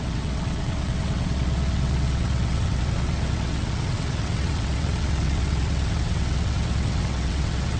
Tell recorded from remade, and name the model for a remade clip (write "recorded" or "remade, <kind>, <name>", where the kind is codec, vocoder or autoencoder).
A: remade, vocoder, WaveNeXt